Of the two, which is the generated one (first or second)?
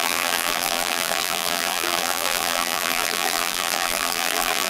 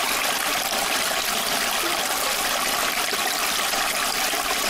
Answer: first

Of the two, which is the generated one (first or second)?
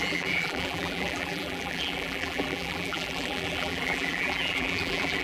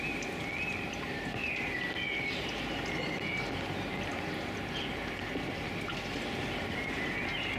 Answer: first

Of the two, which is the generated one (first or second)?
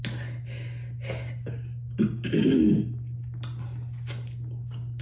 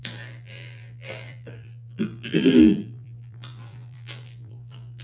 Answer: second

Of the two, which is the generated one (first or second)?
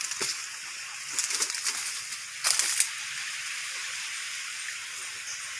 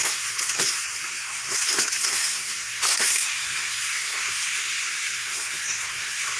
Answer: second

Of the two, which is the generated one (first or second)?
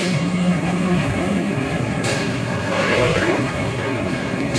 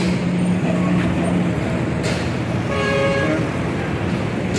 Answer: first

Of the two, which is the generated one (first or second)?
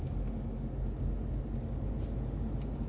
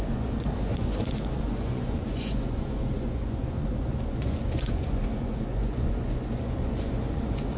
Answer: second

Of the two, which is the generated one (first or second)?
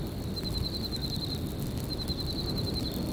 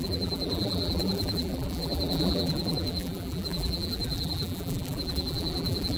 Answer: second